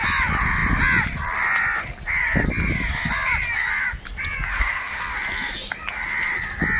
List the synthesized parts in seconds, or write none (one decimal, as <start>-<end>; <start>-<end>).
4.5-5.0